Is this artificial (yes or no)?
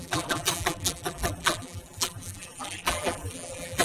yes